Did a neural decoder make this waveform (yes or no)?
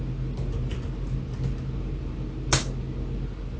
no